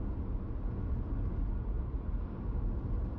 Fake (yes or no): no